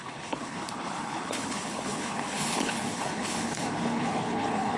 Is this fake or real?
fake